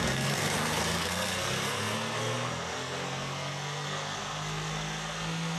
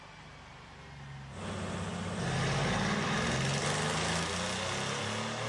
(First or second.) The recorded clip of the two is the second